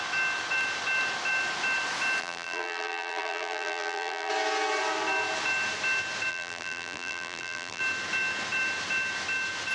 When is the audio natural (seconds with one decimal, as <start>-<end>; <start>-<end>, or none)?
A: 0.0-2.2; 4.3-6.3; 7.8-9.7